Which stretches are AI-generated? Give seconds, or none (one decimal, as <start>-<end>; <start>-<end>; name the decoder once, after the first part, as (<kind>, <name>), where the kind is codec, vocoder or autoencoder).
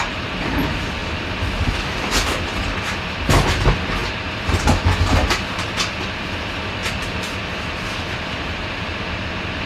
1.0-2.1 (vocoder, BigVGAN v2); 4.0-4.6; 6.8-8.7